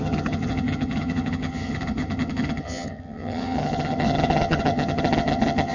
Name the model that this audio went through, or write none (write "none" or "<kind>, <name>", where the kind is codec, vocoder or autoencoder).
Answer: vocoder, HiFi-GAN